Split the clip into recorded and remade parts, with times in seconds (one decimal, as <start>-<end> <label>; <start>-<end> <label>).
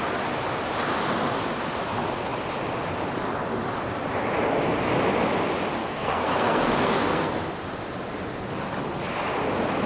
0.0-5.8 recorded; 5.8-7.3 remade; 7.3-9.9 recorded